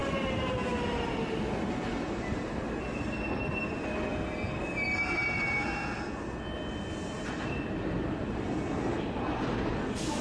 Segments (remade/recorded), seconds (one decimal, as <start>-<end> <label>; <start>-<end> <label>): 0.0-10.2 recorded

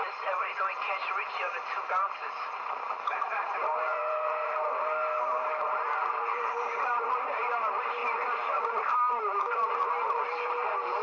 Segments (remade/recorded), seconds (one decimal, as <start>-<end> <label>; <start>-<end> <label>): 0.0-11.0 remade

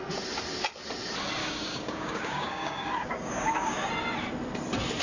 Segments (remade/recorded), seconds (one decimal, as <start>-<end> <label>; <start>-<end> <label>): 0.0-1.4 recorded; 1.4-3.9 remade; 3.9-5.0 recorded

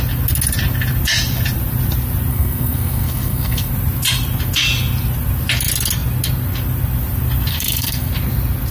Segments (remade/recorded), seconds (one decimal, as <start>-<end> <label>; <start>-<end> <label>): 0.0-2.3 recorded; 2.3-3.7 remade; 3.7-7.5 recorded; 7.5-8.1 remade; 8.1-8.7 recorded